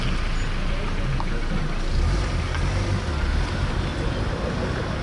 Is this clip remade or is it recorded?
recorded